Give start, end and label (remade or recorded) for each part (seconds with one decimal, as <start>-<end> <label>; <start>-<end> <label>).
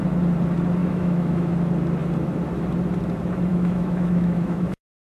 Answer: 0.0-0.8 recorded; 0.8-1.5 remade; 1.5-3.5 recorded; 3.5-5.2 remade